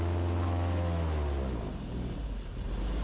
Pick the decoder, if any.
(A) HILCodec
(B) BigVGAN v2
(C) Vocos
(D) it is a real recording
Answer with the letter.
D